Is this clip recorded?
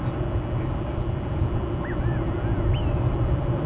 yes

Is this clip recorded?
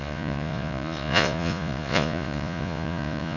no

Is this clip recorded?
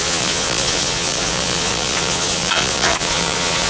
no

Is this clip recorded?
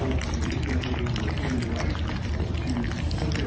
yes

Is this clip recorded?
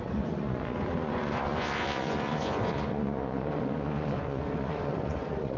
no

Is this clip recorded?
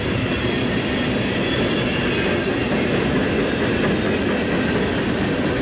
yes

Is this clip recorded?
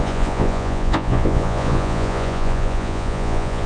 no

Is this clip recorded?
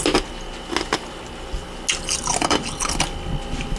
yes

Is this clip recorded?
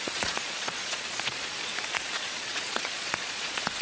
no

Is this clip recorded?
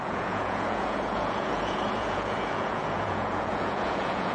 no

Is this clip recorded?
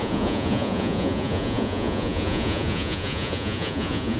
no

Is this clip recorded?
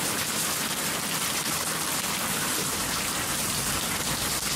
yes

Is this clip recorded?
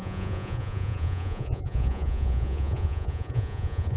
no